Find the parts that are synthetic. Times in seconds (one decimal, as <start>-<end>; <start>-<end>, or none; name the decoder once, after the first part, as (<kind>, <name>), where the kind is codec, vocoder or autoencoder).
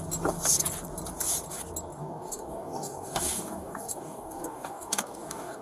2.0-5.6 (codec, DAC)